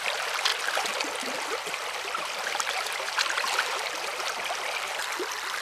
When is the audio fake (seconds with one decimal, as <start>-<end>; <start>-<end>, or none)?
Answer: 0.0-5.0